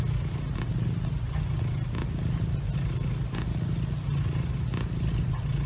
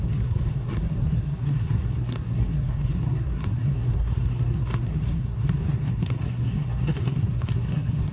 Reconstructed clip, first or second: second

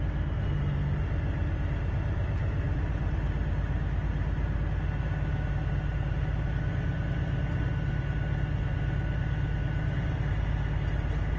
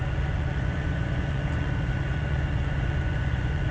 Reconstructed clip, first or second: second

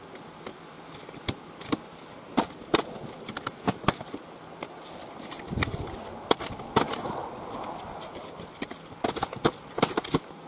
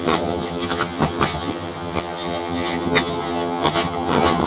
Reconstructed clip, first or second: second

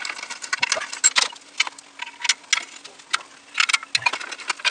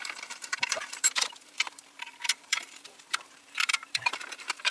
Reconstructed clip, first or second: second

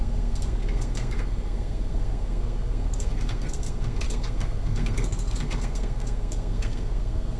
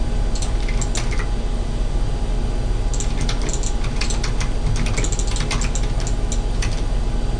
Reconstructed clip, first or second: first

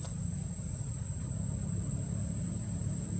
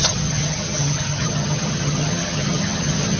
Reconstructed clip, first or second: second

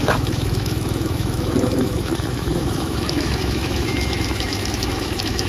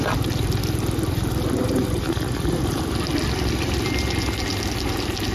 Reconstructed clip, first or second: first